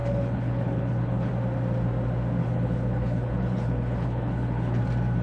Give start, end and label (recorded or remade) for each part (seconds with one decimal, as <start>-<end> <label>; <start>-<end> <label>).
0.0-1.3 remade; 1.3-2.4 recorded; 2.4-4.8 remade; 4.8-5.2 recorded